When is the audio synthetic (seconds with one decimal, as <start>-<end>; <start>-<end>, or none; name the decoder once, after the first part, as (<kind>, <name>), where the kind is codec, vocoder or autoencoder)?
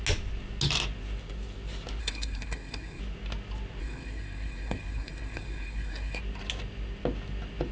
2.0-3.0 (codec, SNAC); 3.8-6.2